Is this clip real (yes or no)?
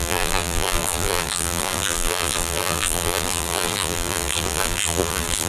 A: no